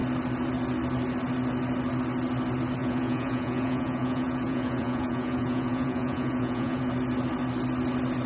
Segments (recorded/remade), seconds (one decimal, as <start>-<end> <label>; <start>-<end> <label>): 0.0-2.8 recorded; 2.8-6.8 remade; 6.8-8.3 recorded